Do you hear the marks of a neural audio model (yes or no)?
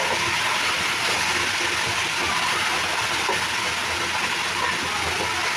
no